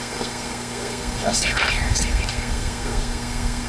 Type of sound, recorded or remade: remade